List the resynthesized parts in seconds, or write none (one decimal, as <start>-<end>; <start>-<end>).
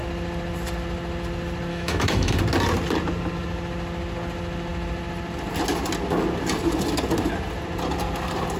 1.7-2.4